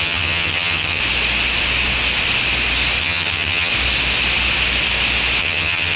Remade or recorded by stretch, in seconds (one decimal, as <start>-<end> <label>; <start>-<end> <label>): 0.0-1.0 remade; 1.0-3.0 recorded; 3.0-3.7 remade; 3.7-5.4 recorded; 5.4-6.0 remade